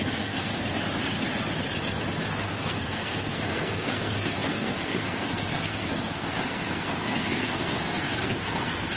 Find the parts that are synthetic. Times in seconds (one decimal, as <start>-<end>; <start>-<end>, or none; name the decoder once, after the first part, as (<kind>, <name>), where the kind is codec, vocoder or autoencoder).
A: 0.0-0.5 (codec, SNAC); 2.3-9.0